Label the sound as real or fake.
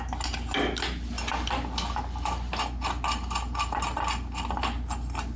real